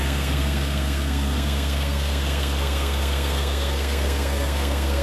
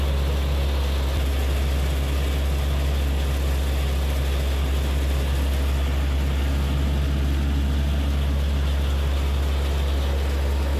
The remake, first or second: first